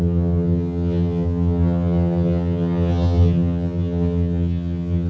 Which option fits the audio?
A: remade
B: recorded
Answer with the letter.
A